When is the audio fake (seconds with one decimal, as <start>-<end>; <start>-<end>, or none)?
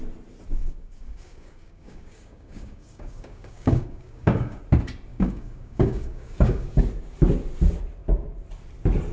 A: 0.6-4.6; 5.1-6.8